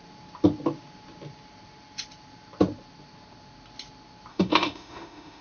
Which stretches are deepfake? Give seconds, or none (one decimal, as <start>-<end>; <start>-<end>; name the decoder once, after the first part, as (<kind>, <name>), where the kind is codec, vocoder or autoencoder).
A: 4.3-5.4 (autoencoder, DAC-VAE)